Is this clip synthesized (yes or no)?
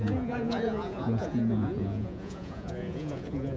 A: yes